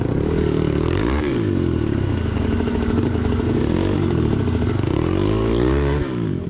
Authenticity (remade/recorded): remade